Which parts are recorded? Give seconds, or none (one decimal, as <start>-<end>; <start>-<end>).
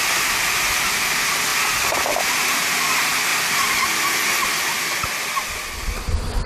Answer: 0.0-1.5; 2.2-3.3; 4.0-6.5